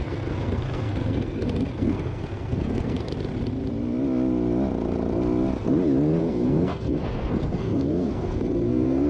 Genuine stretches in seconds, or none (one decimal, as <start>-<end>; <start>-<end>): 3.1-6.2